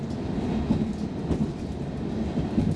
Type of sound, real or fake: real